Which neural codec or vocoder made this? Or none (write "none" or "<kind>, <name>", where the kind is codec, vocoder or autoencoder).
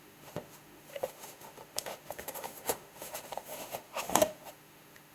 autoencoder, DAC-VAE